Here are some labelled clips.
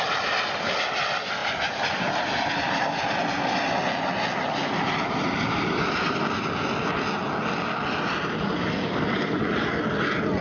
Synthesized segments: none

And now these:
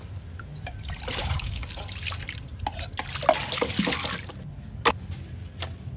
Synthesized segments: 1.2-1.7

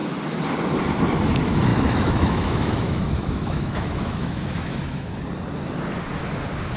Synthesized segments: 1.7-5.2